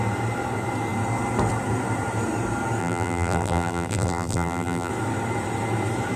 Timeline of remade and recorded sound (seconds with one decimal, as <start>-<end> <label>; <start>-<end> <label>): 0.0-2.8 recorded; 2.8-4.9 remade; 4.9-6.2 recorded